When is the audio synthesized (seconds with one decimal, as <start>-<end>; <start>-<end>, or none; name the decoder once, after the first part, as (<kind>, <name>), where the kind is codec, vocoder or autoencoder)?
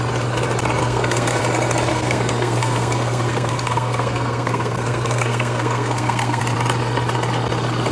0.8-1.4 (codec, SNAC); 1.9-6.4